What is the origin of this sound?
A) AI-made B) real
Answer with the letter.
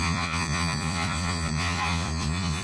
A